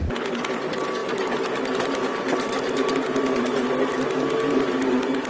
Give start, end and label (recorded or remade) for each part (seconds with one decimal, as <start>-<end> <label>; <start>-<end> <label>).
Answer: 0.0-5.3 recorded